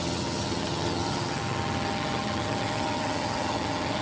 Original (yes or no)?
no